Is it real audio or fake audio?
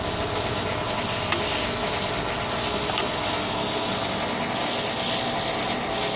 real